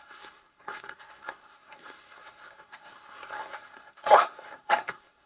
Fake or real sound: fake